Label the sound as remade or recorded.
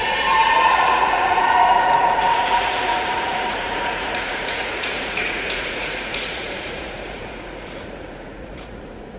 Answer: remade